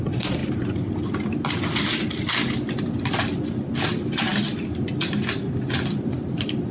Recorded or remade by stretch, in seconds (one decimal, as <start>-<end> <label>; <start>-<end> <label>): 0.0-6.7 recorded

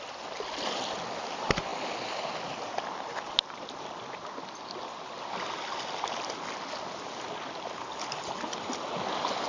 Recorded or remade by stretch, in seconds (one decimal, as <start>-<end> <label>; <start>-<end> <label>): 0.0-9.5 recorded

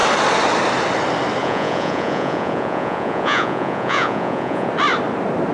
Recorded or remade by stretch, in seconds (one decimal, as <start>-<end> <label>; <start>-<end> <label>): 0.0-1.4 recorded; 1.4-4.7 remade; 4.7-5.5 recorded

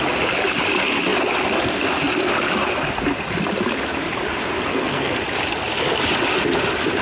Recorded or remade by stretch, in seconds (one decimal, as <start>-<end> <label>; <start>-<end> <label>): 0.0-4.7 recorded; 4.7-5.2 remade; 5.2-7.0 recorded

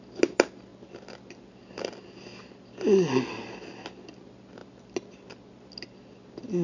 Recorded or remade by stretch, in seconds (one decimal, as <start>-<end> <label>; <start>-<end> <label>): 0.0-6.6 recorded

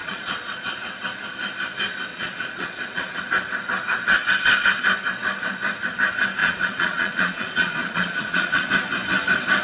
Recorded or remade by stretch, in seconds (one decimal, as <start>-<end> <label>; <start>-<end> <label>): 0.0-0.7 remade; 0.7-2.1 recorded; 2.1-3.2 remade; 3.2-6.4 recorded; 6.4-8.7 remade; 8.7-9.6 recorded

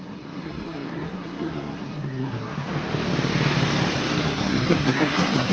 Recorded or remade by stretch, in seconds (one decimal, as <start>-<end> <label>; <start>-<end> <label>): 0.0-2.7 remade; 2.7-4.2 recorded; 4.2-5.5 remade

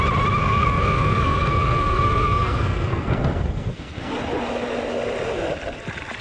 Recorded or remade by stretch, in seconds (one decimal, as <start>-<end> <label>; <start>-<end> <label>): 0.0-0.4 recorded; 0.4-4.1 remade; 4.1-6.2 recorded